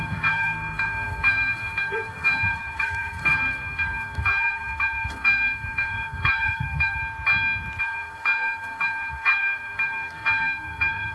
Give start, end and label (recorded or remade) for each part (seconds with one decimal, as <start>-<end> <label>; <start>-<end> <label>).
0.0-7.0 remade; 7.0-7.8 recorded; 7.8-11.1 remade

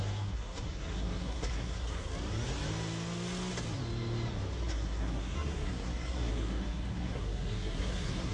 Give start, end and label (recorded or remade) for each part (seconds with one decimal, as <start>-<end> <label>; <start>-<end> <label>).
0.0-2.1 remade; 2.1-4.7 recorded; 4.7-8.3 remade